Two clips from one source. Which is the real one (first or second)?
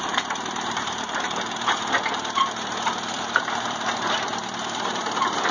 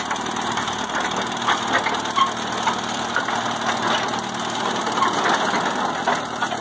second